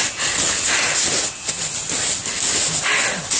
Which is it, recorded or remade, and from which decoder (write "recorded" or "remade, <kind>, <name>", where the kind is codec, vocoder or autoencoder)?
recorded